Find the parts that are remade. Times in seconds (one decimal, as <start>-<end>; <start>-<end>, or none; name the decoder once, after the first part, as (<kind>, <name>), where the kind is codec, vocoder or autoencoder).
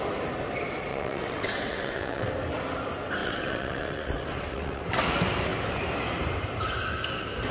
0.9-2.3 (vocoder, WaveNeXt); 3.2-4.8